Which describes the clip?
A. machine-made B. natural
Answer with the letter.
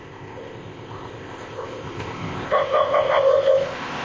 A